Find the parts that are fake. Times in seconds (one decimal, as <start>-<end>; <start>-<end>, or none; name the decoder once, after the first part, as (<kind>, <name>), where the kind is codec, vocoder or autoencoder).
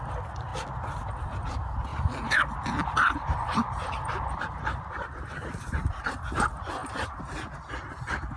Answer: 1.9-6.1 (vocoder, BigVGAN v2); 6.8-7.3